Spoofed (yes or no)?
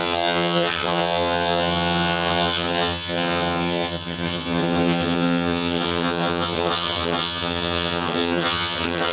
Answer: yes